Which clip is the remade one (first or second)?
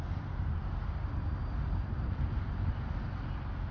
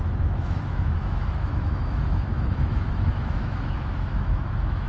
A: second